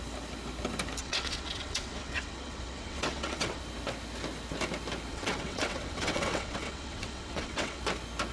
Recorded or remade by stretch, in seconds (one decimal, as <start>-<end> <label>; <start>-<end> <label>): 0.0-1.0 recorded; 1.0-3.6 remade; 3.6-5.1 recorded; 5.1-7.8 remade; 7.8-8.3 recorded